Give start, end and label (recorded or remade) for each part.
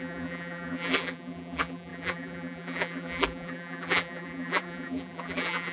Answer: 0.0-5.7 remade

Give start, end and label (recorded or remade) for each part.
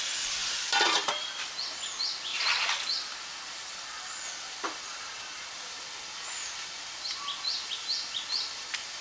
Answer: 0.0-0.4 recorded; 0.4-1.8 remade; 1.8-2.3 recorded; 2.3-4.9 remade; 4.9-9.0 recorded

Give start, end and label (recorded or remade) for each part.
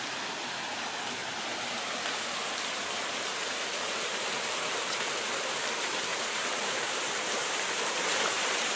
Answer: 0.0-3.3 recorded; 3.3-4.5 remade; 4.5-6.1 recorded; 6.1-8.8 remade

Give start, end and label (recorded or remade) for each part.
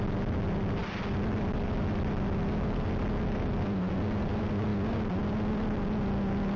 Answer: 0.0-6.6 recorded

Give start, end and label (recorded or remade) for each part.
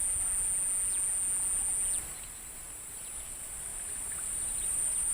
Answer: 0.0-2.7 recorded; 2.7-5.1 remade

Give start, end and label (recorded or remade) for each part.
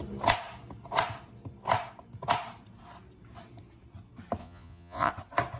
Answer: 0.0-4.4 recorded; 4.4-5.1 remade; 5.1-5.6 recorded